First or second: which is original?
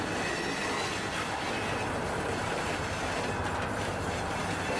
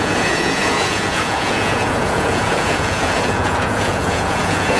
first